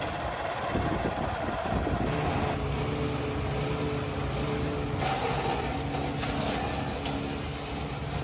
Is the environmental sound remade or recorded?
recorded